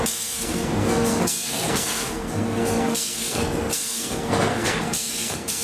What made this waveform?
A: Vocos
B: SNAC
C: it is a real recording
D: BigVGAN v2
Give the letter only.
B